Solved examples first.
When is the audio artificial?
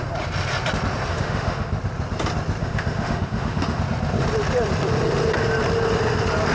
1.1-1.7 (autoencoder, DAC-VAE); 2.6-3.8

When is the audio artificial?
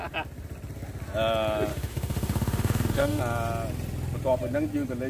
1.7-3.2 (autoencoder, DAC-VAE)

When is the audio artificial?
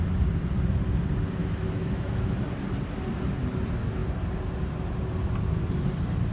1.4-2.4 (autoencoder, DAC-VAE)